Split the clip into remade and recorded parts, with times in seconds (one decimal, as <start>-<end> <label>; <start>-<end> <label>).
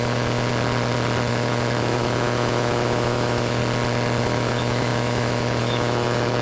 0.0-0.5 remade; 0.5-1.3 recorded; 1.3-3.6 remade; 3.6-4.2 recorded; 4.2-6.4 remade